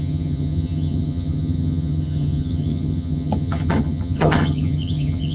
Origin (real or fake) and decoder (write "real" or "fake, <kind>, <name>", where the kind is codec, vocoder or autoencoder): fake, vocoder, HiFi-GAN